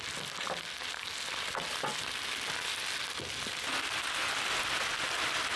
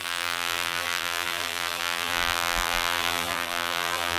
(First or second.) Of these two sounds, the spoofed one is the second